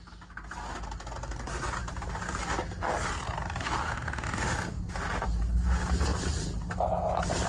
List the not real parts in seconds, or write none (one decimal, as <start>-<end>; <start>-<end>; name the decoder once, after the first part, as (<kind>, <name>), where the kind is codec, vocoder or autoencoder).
3.8-4.8 (autoencoder, DAC-VAE)